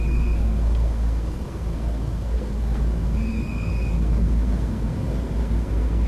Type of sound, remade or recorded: remade